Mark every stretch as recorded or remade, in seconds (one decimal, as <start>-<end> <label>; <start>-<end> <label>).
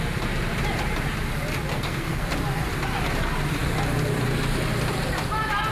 0.0-1.7 recorded; 1.7-2.3 remade; 2.3-5.7 recorded